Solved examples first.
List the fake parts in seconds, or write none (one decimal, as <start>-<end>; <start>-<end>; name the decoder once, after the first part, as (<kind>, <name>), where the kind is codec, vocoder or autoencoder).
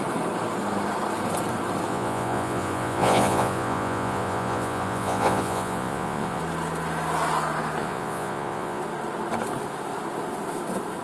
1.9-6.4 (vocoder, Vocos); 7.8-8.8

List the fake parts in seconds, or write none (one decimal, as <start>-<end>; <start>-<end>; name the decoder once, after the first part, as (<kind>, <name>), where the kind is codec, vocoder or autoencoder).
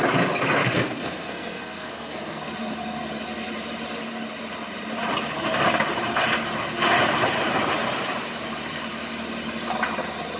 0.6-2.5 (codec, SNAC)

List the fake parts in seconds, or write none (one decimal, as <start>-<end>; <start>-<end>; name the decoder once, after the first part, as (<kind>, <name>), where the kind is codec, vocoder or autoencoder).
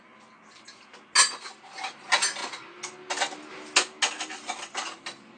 none